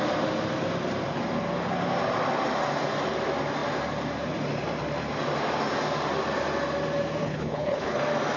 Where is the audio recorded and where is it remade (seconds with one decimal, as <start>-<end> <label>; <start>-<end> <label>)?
0.0-7.2 recorded; 7.2-8.0 remade; 8.0-8.4 recorded